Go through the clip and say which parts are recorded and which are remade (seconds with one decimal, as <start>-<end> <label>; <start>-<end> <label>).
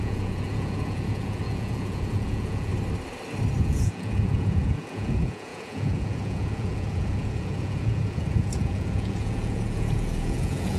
0.0-2.7 remade; 2.7-3.6 recorded; 3.6-10.8 remade